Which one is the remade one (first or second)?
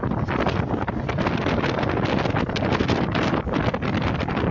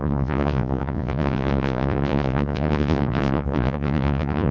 second